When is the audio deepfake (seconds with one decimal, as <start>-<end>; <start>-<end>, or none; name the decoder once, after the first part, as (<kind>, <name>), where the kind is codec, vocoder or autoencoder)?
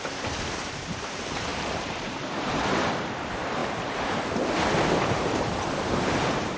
0.0-6.6 (vocoder, BigVGAN v2)